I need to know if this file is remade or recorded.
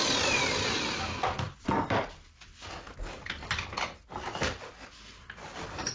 recorded